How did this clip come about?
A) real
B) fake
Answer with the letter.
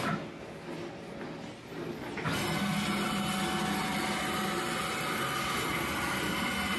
A